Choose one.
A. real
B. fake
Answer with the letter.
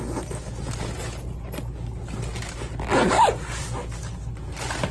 A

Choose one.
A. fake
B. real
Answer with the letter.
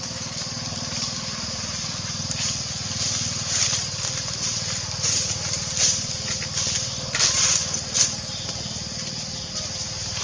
B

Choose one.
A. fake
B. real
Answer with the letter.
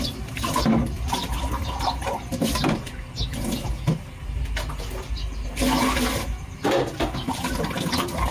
B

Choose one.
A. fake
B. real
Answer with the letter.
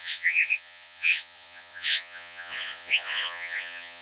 A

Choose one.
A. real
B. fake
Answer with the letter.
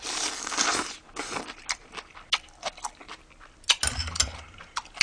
A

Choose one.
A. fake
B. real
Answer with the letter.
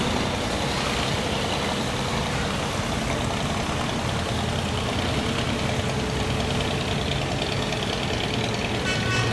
B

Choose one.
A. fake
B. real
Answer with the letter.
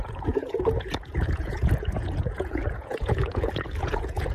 A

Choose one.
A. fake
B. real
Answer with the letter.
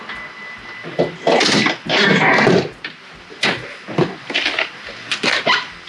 B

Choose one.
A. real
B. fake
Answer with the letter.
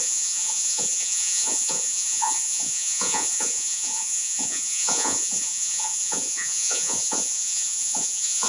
B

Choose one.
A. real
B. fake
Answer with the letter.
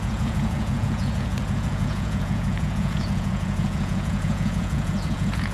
B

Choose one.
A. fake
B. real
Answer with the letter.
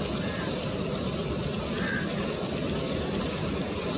B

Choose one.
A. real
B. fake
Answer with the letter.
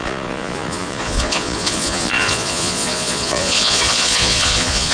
B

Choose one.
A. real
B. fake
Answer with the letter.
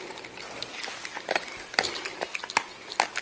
A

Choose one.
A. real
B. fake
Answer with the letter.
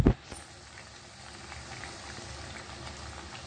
A